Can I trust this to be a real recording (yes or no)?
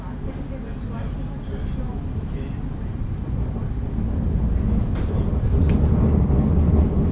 yes